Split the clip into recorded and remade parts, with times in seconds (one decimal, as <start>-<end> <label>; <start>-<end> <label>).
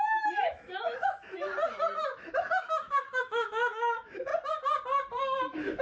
0.0-1.5 remade; 1.5-2.0 recorded; 2.0-4.3 remade; 4.3-5.2 recorded; 5.2-5.8 remade